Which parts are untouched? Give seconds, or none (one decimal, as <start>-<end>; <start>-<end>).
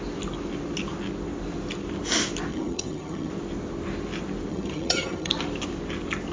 0.0-2.5; 3.3-4.5; 5.3-6.3